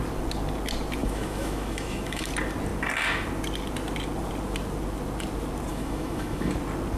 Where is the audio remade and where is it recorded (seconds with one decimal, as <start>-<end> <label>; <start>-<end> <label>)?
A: 0.0-1.0 recorded; 1.0-2.3 remade; 2.3-5.7 recorded; 5.7-6.5 remade; 6.5-7.0 recorded